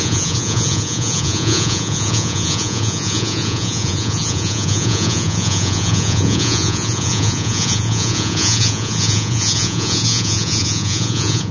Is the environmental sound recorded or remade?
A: remade